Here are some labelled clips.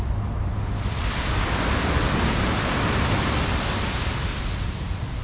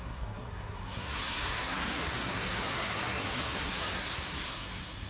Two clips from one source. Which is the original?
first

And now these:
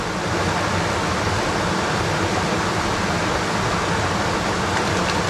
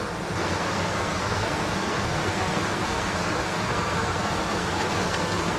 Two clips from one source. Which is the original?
first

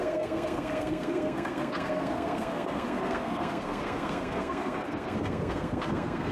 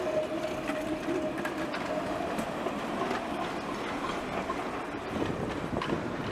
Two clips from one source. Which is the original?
second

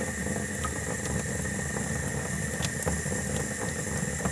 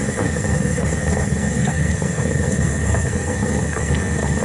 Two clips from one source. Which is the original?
first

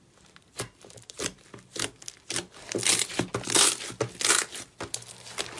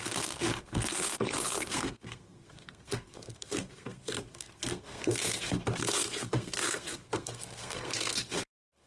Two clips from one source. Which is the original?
first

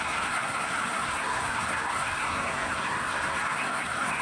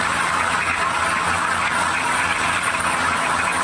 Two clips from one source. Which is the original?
second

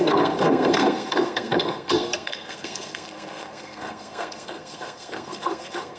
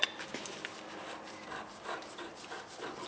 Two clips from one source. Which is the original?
second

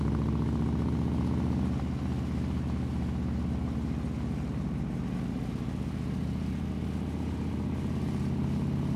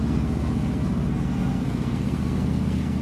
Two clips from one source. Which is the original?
first